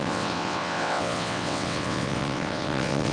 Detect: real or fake fake